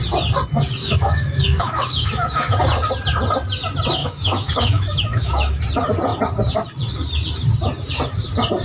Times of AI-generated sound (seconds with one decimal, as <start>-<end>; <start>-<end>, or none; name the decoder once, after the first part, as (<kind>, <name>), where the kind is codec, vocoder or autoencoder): 0.8-2.6 (autoencoder, DAC-VAE); 4.0-5.6